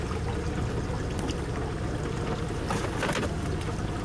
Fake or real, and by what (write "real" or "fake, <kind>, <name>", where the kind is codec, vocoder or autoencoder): fake, vocoder, BigVGAN v2